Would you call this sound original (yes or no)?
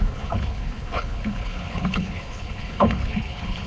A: no